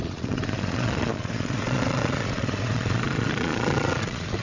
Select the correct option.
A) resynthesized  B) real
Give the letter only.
A